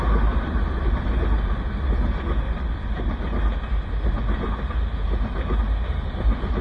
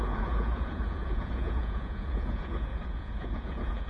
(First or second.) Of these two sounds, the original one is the first